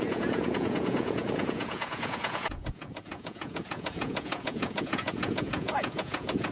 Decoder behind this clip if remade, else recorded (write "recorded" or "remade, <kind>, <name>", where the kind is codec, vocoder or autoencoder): remade, vocoder, Vocos